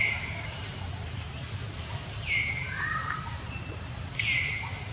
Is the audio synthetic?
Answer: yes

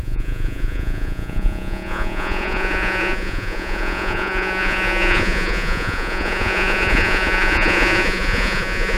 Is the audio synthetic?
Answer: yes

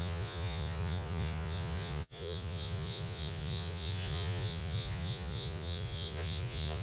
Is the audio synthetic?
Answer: yes